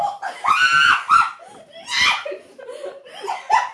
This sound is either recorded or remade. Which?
recorded